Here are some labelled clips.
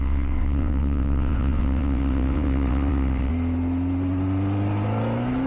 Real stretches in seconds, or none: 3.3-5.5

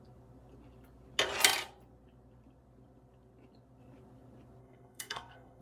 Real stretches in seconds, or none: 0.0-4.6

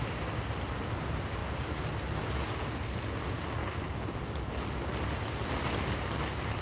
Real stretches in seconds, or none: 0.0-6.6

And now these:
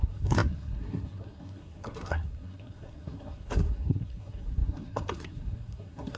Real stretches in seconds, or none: none

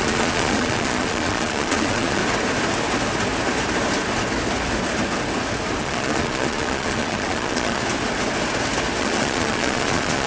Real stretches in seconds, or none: 2.2-5.8; 7.8-9.0